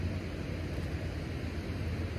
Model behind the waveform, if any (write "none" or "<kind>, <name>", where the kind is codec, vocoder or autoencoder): none